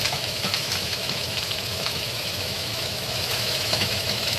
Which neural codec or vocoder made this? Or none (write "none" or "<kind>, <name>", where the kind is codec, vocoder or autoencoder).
autoencoder, DAC-VAE